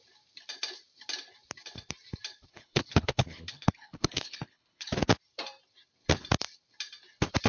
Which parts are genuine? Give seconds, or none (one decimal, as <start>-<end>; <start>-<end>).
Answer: 0.0-2.5; 4.9-7.5